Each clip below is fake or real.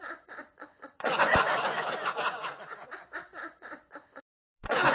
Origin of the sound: fake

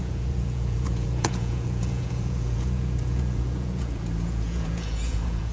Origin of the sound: fake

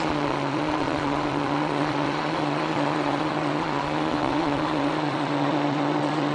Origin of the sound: fake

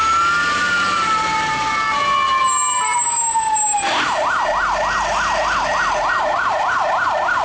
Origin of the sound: real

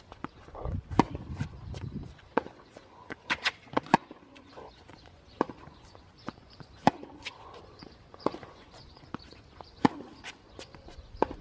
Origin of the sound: fake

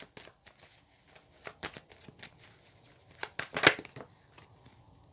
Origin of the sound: real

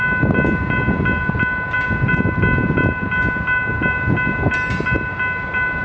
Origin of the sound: real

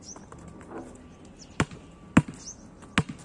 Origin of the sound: real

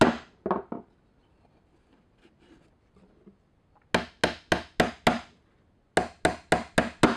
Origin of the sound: real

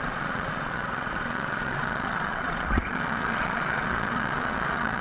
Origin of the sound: fake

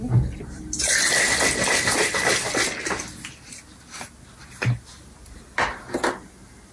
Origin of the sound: real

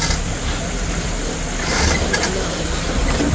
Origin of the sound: real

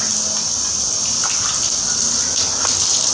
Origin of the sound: real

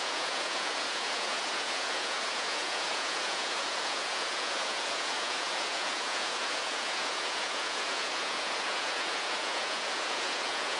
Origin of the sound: fake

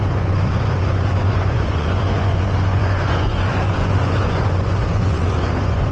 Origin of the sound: fake